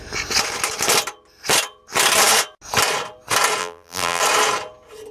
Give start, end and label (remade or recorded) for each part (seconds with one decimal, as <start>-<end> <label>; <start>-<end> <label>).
0.0-3.6 recorded; 3.6-4.2 remade; 4.2-5.1 recorded